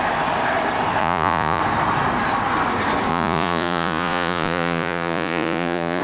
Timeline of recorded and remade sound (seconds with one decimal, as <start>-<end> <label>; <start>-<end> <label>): 0.0-1.0 recorded; 1.0-1.6 remade; 1.6-3.1 recorded; 3.1-6.0 remade